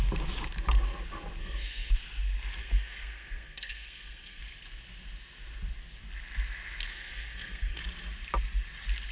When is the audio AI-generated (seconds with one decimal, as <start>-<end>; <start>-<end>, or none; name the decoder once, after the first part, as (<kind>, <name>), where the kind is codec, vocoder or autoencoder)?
1.4-1.9 (codec, SNAC); 2.6-4.4; 6.9-7.8